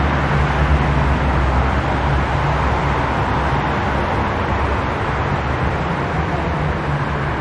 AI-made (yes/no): no